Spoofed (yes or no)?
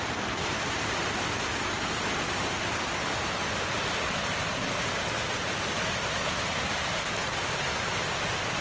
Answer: no